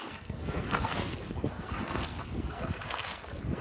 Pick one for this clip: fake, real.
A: fake